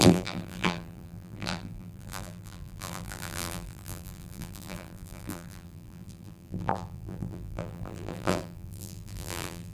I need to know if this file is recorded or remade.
remade